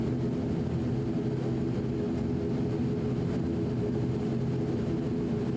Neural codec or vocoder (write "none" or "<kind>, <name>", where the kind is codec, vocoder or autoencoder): none